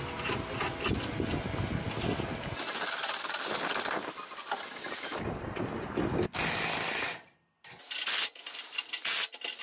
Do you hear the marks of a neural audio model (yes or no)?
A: no